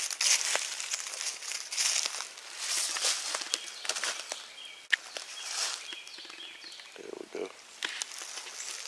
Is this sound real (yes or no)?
yes